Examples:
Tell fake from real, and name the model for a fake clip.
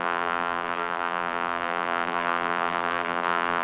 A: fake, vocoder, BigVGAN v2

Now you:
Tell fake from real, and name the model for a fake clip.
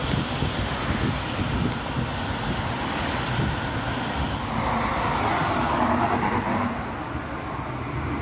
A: real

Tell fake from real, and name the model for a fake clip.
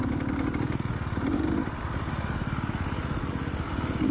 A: real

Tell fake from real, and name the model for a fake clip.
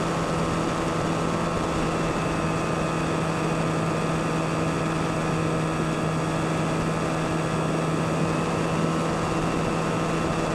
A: real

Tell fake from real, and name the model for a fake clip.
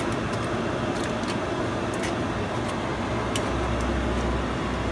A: real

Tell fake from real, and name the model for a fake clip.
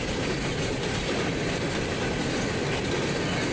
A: real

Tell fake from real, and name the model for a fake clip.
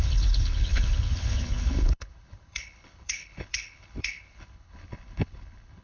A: fake, codec, HILCodec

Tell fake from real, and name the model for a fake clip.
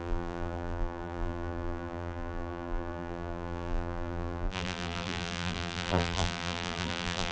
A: fake, vocoder, BigVGAN v2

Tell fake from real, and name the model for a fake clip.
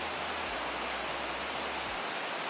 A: real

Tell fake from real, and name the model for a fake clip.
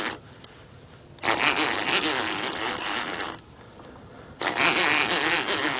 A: real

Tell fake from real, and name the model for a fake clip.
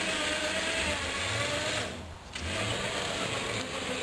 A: real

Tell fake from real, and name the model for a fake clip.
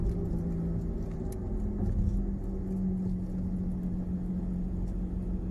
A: real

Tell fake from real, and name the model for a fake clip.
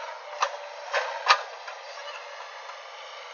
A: real